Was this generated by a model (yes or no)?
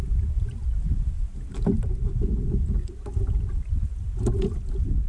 yes